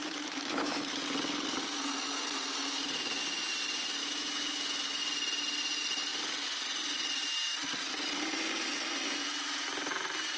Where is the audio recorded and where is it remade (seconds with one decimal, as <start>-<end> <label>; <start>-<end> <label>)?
0.0-1.0 remade; 1.0-4.0 recorded; 4.0-5.0 remade; 5.0-10.4 recorded